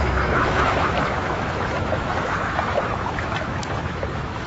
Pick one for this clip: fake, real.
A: fake